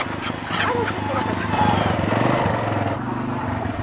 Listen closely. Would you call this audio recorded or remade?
recorded